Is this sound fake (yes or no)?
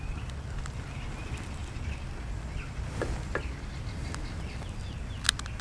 no